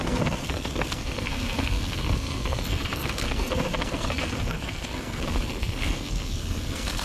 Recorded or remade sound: remade